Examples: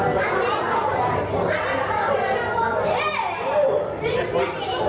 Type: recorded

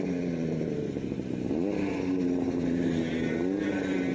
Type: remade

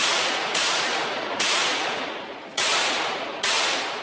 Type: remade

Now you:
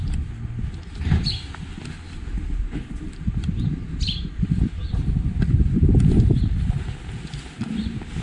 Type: recorded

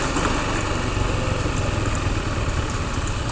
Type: recorded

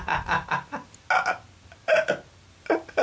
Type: recorded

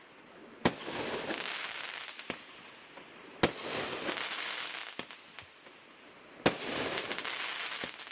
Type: recorded